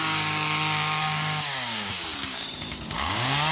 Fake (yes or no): yes